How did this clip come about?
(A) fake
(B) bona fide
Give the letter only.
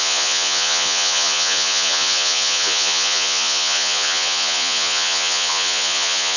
A